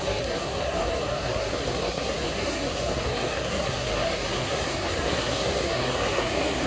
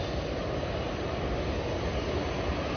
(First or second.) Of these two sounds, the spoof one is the first